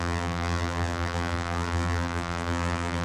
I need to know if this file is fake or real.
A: fake